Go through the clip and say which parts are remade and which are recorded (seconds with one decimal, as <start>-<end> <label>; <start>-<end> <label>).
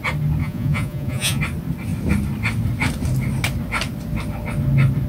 0.0-0.4 recorded; 0.4-1.4 remade; 1.4-5.1 recorded